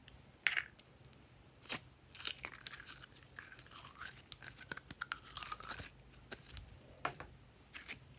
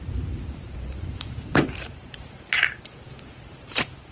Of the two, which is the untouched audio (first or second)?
first